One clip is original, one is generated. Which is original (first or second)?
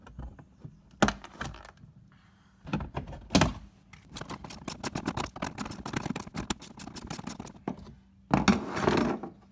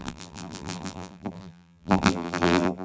first